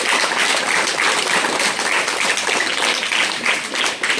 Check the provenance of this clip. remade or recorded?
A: recorded